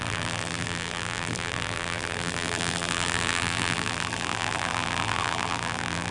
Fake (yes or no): yes